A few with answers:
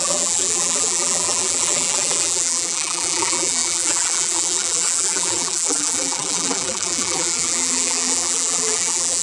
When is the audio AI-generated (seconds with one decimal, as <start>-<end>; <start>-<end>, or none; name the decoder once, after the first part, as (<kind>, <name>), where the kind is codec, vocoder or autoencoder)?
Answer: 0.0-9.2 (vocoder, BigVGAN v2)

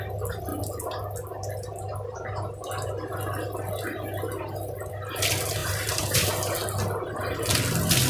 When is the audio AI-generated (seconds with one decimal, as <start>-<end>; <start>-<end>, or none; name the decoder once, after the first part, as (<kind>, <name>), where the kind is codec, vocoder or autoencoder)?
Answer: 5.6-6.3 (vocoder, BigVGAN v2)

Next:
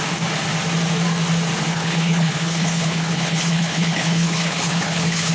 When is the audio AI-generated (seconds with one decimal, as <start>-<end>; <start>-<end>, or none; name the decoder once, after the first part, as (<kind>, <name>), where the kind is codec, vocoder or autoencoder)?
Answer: 1.7-5.3 (codec, HILCodec)